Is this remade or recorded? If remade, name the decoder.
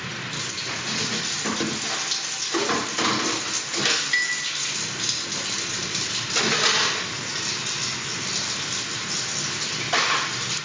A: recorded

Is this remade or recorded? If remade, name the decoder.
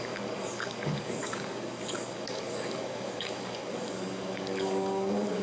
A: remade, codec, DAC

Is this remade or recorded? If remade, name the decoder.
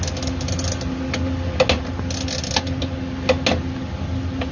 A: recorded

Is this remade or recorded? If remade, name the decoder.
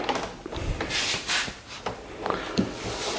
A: recorded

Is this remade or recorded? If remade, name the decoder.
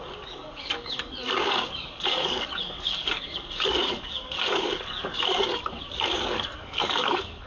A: remade, codec, DAC